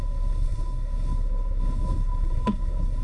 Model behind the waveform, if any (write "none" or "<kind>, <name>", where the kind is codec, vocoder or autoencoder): codec, SNAC